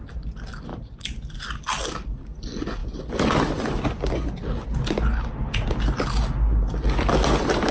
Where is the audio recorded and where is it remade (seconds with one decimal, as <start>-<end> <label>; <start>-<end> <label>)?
0.0-0.7 recorded; 0.7-1.4 remade; 1.4-7.7 recorded